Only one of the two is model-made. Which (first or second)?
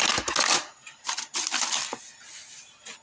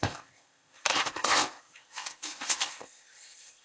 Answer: second